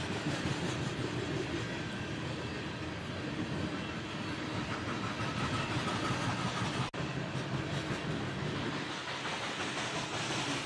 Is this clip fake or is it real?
real